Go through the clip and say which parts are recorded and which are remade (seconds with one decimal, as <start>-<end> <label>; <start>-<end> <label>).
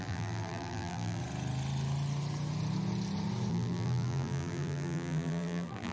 0.0-1.2 remade; 1.2-3.5 recorded; 3.5-5.9 remade